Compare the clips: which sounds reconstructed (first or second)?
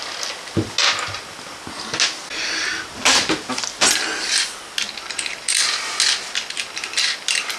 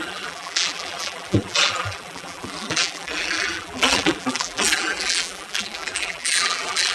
second